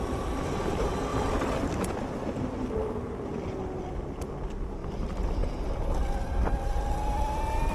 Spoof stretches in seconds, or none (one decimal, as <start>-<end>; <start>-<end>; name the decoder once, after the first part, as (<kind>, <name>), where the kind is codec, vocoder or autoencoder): 1.1-1.7 (vocoder, BigVGAN v2)